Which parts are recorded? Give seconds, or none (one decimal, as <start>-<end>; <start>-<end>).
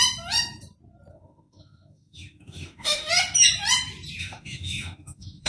0.0-1.1; 3.1-4.2